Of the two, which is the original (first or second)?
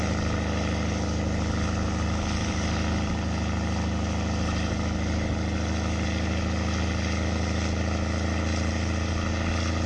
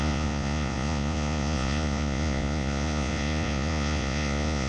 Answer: first